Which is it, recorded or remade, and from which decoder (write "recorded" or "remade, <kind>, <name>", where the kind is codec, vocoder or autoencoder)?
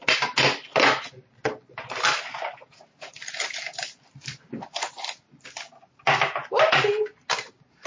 recorded